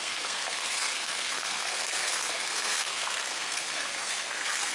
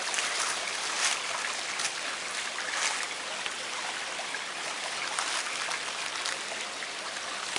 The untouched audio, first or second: second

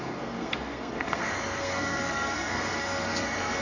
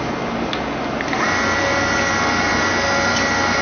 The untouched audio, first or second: second